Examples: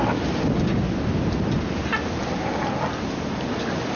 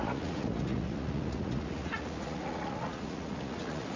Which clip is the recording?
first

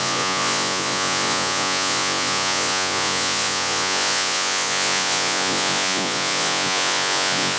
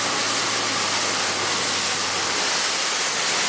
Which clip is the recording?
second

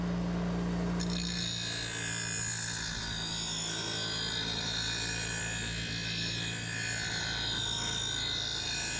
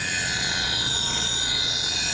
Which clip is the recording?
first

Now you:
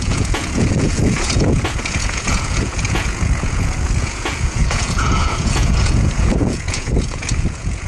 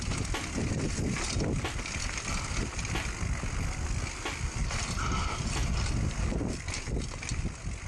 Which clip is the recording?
second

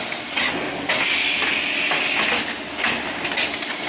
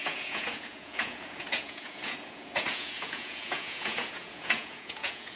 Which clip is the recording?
first